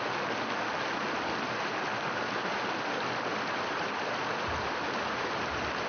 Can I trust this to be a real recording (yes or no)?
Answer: yes